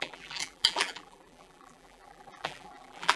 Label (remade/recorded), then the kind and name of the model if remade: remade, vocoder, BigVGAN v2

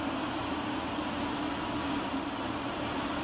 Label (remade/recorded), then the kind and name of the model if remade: recorded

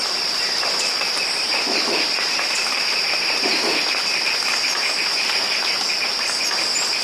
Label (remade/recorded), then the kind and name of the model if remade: remade, vocoder, BigVGAN v2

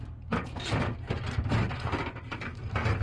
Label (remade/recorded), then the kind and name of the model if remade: recorded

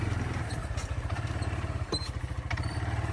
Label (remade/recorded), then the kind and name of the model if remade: remade, vocoder, BigVGAN v2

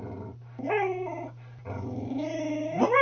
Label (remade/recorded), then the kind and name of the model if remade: recorded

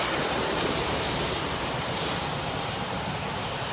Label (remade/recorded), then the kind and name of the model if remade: remade, vocoder, BigVGAN v2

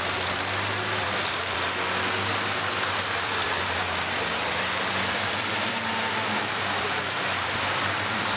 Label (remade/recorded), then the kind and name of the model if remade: remade, vocoder, BigVGAN v2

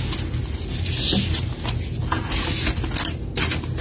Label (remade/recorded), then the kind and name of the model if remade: recorded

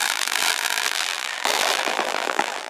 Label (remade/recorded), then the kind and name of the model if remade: remade, vocoder, BigVGAN v2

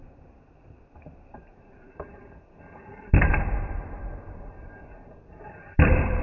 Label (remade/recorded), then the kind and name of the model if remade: remade, vocoder, BigVGAN v2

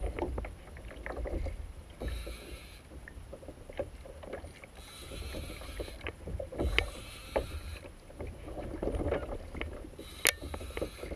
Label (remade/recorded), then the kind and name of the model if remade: recorded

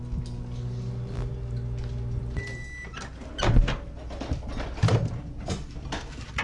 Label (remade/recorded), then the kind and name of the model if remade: recorded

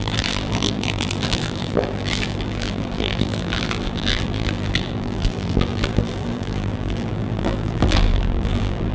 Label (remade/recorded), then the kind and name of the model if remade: remade, vocoder, BigVGAN v2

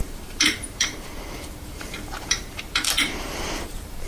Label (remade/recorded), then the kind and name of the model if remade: remade, vocoder, BigVGAN v2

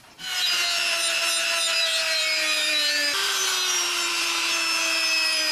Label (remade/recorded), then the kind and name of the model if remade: remade, vocoder, BigVGAN v2